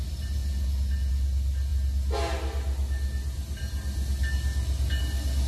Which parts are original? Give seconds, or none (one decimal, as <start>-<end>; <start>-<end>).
0.0-5.5